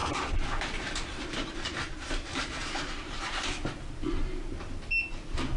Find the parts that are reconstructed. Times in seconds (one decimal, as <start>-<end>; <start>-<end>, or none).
0.0-3.4